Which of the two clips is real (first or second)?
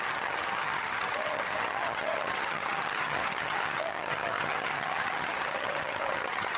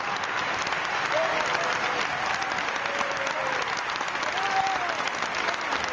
second